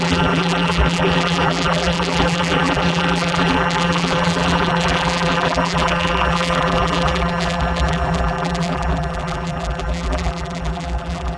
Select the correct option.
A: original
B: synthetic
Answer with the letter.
B